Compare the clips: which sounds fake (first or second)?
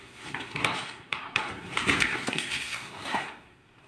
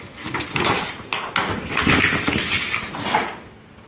first